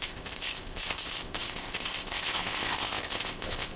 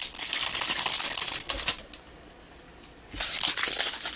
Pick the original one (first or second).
second